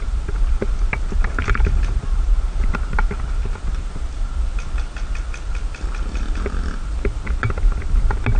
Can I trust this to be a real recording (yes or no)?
yes